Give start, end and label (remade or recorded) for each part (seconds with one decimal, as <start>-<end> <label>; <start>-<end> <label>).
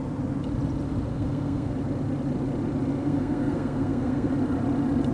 0.0-1.1 recorded; 1.1-1.7 remade; 1.7-3.0 recorded; 3.0-4.3 remade; 4.3-5.1 recorded